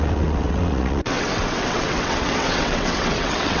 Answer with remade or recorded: remade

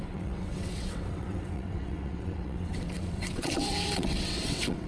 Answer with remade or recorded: remade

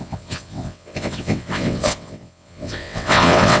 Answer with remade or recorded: remade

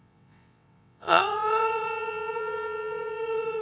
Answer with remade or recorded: remade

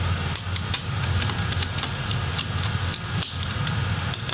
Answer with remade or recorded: recorded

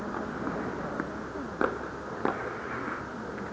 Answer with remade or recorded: recorded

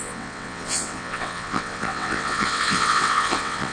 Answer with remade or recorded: remade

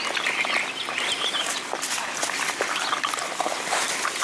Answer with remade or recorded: recorded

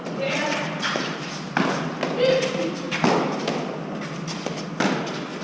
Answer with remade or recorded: recorded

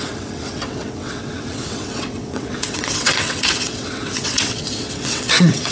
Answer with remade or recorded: remade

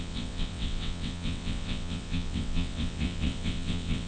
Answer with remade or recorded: remade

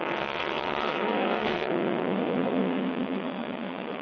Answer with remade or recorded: remade